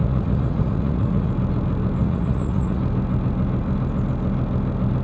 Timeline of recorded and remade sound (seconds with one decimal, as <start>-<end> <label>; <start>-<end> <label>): 0.0-1.3 remade; 1.3-2.0 recorded; 2.0-2.8 remade; 2.8-5.0 recorded